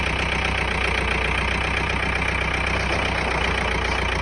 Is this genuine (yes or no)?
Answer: yes